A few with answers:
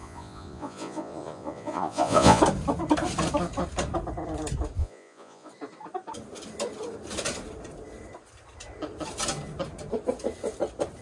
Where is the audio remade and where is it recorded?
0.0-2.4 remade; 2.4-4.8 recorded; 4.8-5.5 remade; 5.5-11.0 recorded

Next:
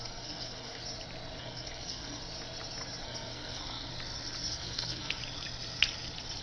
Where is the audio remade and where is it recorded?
0.0-0.8 remade; 0.8-1.4 recorded; 1.4-2.2 remade; 2.2-3.0 recorded; 3.0-3.9 remade; 3.9-4.5 recorded; 4.5-5.2 remade; 5.2-6.4 recorded

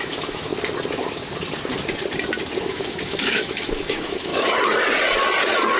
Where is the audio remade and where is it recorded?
0.0-0.5 remade; 0.5-2.6 recorded; 2.6-4.3 remade; 4.3-5.8 recorded

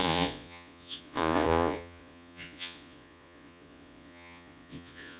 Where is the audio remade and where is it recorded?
0.0-5.2 remade